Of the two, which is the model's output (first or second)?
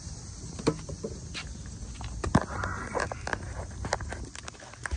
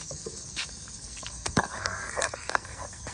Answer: second